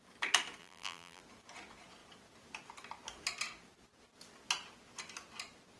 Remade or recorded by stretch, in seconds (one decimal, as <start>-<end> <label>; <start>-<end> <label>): 0.0-0.6 recorded; 0.6-1.2 remade; 1.2-5.8 recorded